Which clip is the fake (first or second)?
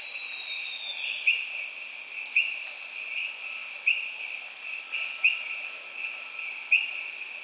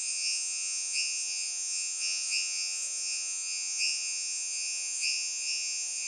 second